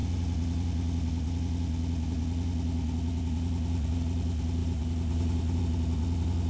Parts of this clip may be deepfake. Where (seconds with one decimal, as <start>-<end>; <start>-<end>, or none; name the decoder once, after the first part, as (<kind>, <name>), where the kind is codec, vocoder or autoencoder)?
4.6-5.6 (vocoder, BigVGAN v2)